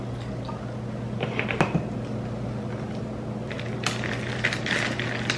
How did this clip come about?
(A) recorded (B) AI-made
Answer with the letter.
A